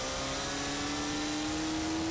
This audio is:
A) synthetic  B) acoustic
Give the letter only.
B